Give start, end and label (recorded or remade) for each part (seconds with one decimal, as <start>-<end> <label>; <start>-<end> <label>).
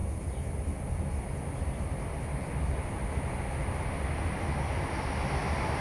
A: 0.0-2.0 remade; 2.0-5.8 recorded